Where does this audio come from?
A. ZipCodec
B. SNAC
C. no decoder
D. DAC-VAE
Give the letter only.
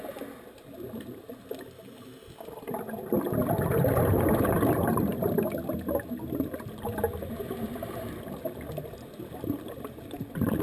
C